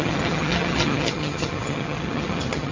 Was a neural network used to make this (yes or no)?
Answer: yes